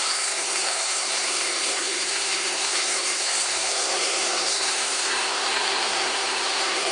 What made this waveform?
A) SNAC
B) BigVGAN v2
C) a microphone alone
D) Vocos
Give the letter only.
A